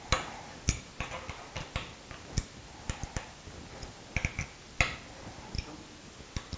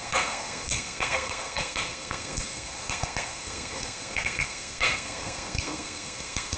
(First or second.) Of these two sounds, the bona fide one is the first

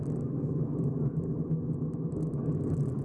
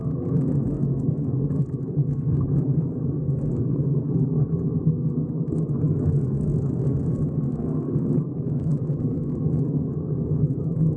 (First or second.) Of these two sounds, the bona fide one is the first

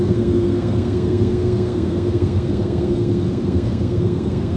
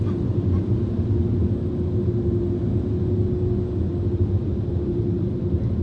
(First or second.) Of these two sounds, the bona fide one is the second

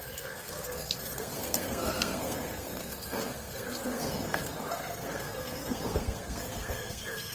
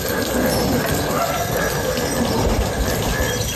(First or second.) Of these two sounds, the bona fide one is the second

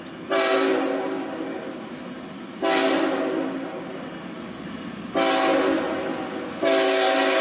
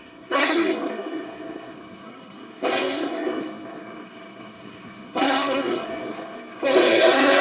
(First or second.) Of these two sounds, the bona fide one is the first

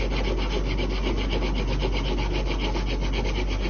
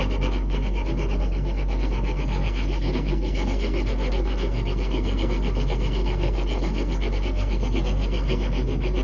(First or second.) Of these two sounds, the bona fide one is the first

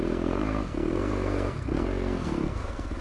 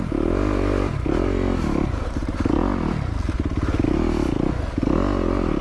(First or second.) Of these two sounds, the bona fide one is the second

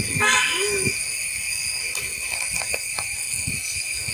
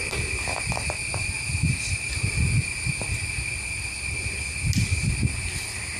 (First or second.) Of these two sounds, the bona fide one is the second